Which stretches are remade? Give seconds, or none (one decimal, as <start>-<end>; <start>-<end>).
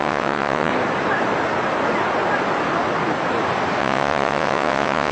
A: 0.0-0.7; 3.8-5.1